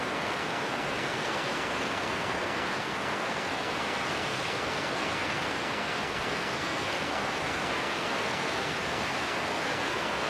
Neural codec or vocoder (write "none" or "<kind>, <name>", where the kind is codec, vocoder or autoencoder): codec, SNAC